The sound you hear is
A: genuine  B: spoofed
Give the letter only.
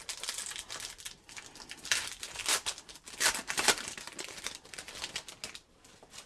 A